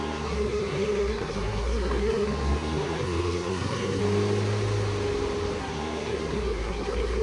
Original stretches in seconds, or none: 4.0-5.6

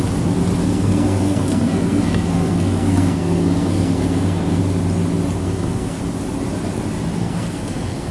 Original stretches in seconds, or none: 0.0-0.6; 4.6-5.4; 6.0-7.2

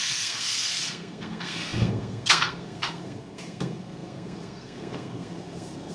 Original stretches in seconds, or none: none